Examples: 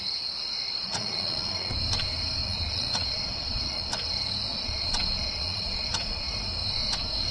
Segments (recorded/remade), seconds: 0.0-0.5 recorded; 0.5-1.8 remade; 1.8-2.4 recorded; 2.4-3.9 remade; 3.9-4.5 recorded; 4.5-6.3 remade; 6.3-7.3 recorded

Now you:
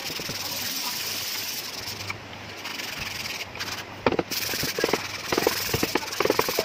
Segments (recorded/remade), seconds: 0.0-0.5 remade; 0.5-2.7 recorded; 2.7-5.9 remade; 5.9-6.6 recorded

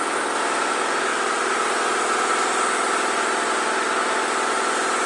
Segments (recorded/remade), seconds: 0.0-5.1 recorded

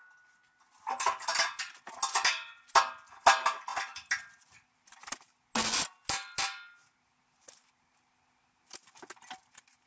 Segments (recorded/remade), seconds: 0.0-9.9 recorded

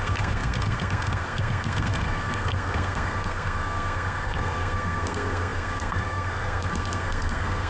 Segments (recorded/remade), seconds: 0.0-7.7 remade

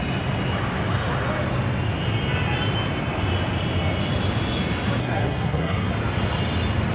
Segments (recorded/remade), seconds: 0.0-5.0 recorded; 5.0-5.9 remade; 5.9-6.9 recorded